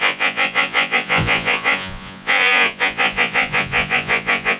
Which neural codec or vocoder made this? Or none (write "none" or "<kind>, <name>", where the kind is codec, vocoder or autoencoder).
vocoder, Vocos